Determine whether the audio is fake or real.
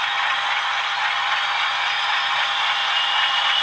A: real